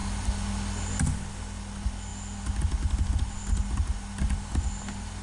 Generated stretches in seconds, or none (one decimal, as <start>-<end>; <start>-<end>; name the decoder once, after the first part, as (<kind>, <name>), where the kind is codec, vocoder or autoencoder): none